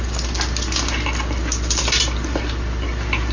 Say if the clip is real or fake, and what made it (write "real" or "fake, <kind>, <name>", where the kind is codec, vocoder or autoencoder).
real